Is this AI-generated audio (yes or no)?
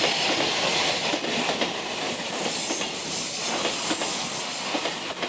no